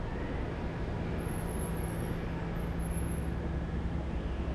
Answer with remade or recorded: recorded